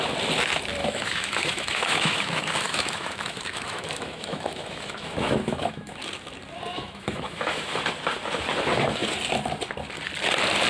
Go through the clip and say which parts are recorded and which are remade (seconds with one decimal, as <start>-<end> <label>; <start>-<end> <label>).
0.0-0.8 recorded; 0.8-6.0 remade; 6.0-6.7 recorded; 6.7-7.8 remade; 7.8-10.7 recorded